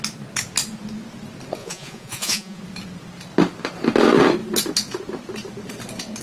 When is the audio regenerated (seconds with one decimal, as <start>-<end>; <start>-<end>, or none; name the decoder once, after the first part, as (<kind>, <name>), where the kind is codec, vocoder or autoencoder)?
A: 1.6-2.6 (vocoder, Vocos)